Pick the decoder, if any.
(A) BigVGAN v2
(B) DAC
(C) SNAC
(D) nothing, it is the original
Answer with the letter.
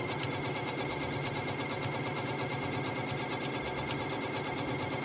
D